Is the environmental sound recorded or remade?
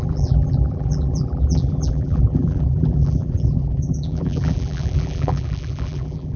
remade